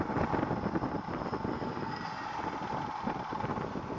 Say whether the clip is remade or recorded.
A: recorded